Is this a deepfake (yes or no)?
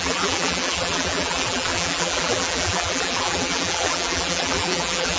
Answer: yes